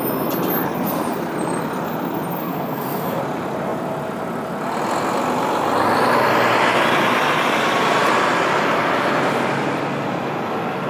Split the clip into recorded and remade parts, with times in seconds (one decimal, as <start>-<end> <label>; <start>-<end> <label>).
0.0-2.4 recorded; 2.4-3.2 remade; 3.2-10.9 recorded